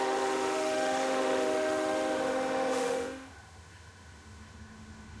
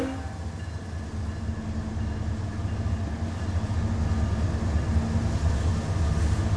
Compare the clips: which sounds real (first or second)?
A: second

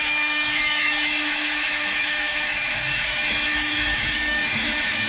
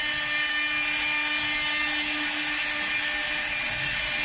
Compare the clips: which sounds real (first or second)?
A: second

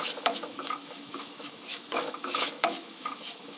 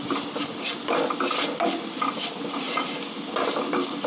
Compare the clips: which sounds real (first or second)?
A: second